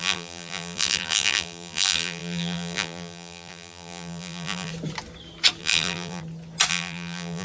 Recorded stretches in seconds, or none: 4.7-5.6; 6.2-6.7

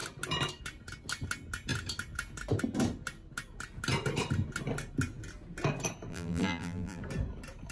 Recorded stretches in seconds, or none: 0.0-6.1; 7.0-7.7

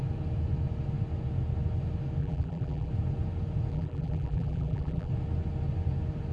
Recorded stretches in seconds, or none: 0.0-2.2; 2.9-3.7; 5.1-6.3

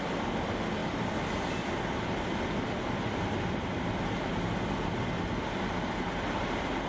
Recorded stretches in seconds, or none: 0.0-6.9

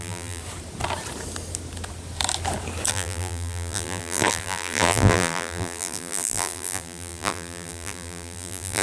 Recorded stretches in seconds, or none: 0.4-2.9

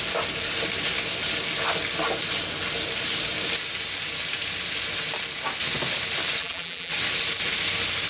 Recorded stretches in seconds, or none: 0.0-6.4; 6.9-8.1